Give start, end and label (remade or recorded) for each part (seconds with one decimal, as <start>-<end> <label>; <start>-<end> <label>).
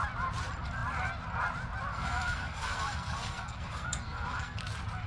0.0-1.9 recorded; 1.9-4.6 remade; 4.6-5.1 recorded